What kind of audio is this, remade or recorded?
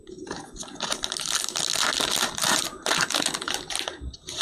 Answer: recorded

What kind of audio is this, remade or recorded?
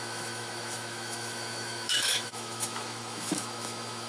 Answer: remade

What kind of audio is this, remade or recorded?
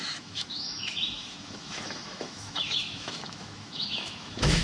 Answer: remade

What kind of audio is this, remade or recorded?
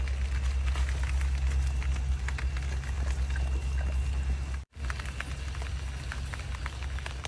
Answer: recorded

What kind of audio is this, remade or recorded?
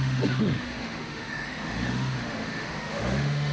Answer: remade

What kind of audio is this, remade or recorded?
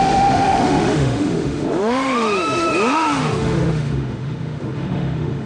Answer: remade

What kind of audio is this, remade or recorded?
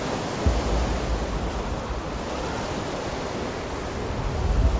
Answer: recorded